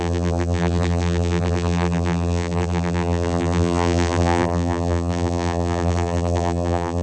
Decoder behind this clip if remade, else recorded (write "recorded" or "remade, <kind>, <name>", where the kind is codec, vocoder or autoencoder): remade, vocoder, BigVGAN v2